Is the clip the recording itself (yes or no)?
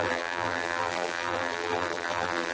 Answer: no